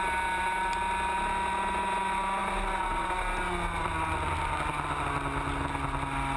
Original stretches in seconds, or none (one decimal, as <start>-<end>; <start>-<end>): 0.0-6.4